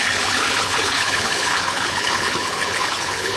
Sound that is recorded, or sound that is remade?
remade